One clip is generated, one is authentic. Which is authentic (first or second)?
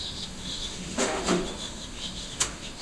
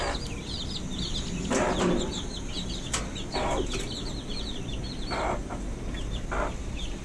second